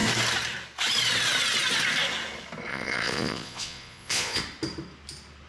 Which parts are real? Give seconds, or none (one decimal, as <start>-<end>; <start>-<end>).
0.0-2.7; 4.4-5.5